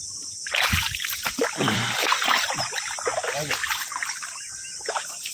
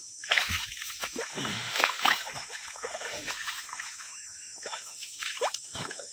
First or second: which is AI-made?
second